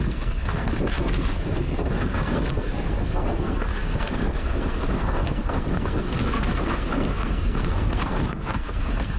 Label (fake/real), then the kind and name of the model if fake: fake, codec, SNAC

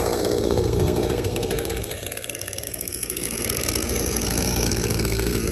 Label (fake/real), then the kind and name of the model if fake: fake, codec, SNAC